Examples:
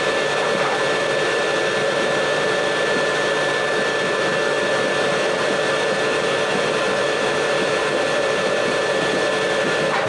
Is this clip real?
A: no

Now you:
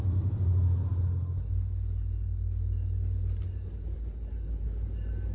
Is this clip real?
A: yes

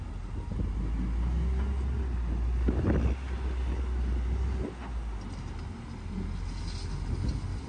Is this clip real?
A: yes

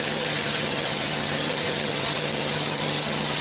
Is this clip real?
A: no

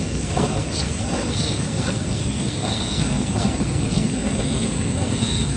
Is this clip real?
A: no